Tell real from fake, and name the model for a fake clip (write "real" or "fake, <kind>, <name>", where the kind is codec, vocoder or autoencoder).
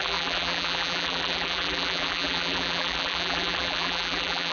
fake, vocoder, BigVGAN v2